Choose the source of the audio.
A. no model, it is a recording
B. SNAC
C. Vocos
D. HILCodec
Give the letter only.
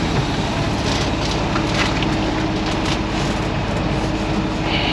A